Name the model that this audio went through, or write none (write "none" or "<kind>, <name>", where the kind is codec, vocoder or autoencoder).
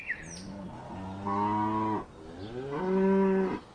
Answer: none